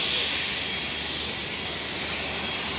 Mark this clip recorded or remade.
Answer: recorded